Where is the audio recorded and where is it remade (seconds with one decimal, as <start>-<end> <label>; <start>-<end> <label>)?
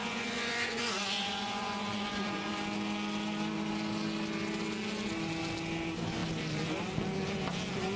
0.0-2.5 remade; 2.5-8.0 recorded